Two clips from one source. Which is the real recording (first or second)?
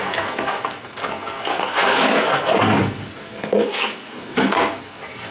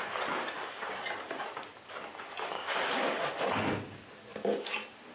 second